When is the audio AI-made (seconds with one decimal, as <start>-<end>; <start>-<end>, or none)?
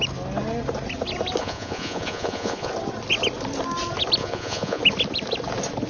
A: 1.4-2.7; 4.2-4.8